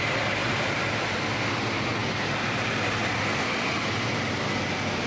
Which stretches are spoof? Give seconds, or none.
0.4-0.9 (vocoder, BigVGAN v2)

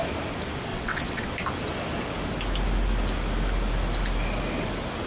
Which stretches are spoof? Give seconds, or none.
0.7-1.3 (vocoder, WaveNeXt)

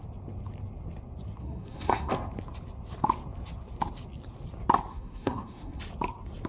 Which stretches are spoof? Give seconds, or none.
1.4-2.1 (codec, SNAC); 4.9-5.8

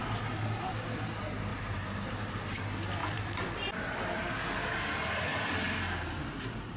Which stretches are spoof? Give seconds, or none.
1.5-2.3 (vocoder, BigVGAN v2); 3.0-3.8

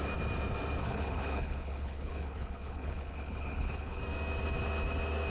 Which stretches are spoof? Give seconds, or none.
0.8-4.0 (codec, HILCodec)

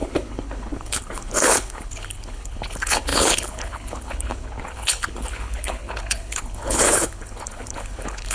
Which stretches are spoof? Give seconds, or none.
0.0-8.3 (codec, HILCodec)